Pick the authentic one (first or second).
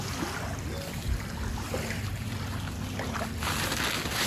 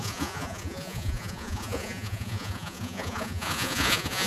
first